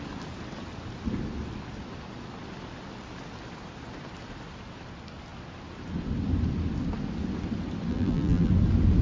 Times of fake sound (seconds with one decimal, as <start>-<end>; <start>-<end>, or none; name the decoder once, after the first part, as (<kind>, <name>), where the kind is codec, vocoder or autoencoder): 7.9-8.5 (vocoder, BigVGAN v2)